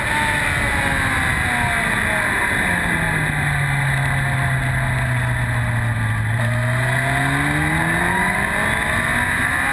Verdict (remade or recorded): recorded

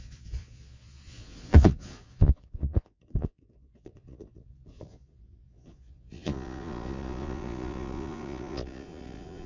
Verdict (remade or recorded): remade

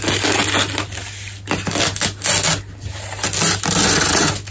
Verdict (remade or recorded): recorded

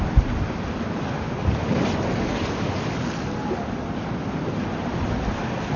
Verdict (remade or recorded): recorded